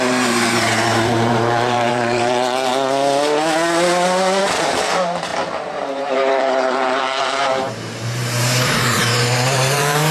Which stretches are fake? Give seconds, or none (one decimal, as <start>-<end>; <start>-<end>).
0.0-2.7; 4.4-10.1